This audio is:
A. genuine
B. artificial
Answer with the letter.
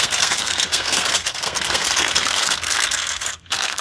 B